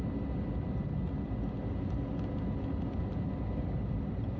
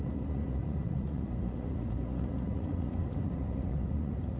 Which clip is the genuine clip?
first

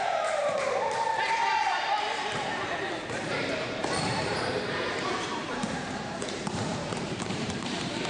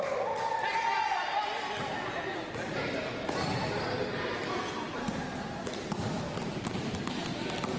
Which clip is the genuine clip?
second